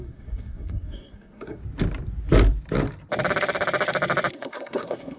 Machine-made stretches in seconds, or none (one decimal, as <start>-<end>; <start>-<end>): 0.0-1.6; 4.3-5.2